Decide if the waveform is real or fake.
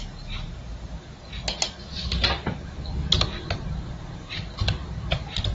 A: real